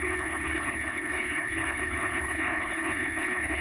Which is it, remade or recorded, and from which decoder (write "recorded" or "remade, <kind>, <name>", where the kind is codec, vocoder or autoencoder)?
remade, codec, HILCodec